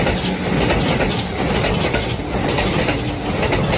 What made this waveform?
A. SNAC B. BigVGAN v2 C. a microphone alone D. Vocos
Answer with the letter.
C